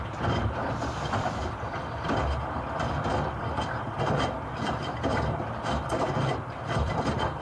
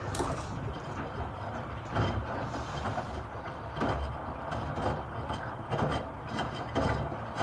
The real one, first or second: second